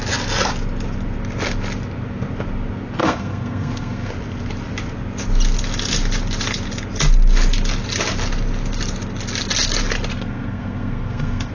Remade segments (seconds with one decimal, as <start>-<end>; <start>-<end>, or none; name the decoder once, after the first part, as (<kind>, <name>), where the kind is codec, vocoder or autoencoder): 3.0-4.1 (codec, SNAC); 10.1-11.5